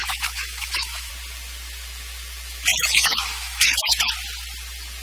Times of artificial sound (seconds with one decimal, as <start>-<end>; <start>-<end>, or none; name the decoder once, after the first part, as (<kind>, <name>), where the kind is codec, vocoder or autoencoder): 0.0-1.1 (autoencoder, DAC-VAE); 2.7-4.1

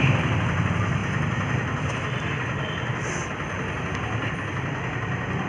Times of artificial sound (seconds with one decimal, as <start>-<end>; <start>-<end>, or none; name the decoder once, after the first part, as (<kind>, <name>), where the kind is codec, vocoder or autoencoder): none

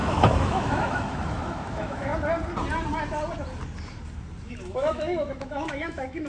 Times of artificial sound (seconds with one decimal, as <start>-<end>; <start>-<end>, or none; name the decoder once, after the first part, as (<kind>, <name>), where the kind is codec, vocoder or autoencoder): 0.0-2.1 (autoencoder, DAC-VAE); 4.5-6.3

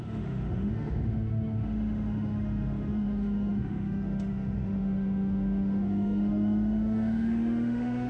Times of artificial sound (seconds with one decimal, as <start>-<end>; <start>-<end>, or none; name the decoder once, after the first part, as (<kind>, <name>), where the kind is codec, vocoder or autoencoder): 0.0-8.1 (autoencoder, DAC-VAE)

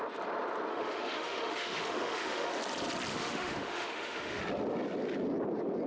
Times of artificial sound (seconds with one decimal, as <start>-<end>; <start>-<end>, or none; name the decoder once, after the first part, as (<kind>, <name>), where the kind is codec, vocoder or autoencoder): 0.7-2.5 (autoencoder, DAC-VAE); 3.1-4.4

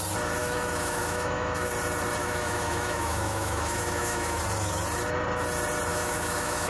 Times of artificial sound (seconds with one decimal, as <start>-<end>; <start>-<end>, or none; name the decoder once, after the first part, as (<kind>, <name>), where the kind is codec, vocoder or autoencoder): 0.4-1.7 (autoencoder, DAC-VAE); 2.2-4.4; 5.9-6.7